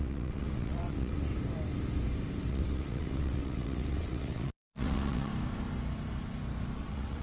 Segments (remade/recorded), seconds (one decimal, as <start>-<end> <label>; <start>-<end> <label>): 0.0-1.3 remade; 1.3-2.5 recorded; 2.5-5.3 remade; 5.3-6.8 recorded; 6.8-7.2 remade